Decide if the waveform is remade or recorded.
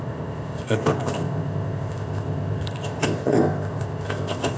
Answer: remade